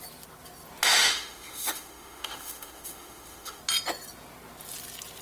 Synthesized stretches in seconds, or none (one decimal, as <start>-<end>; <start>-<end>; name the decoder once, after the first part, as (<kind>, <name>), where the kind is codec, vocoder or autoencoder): 0.9-3.6 (autoencoder, DAC-VAE)